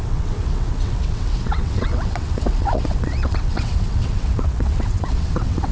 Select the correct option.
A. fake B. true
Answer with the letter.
A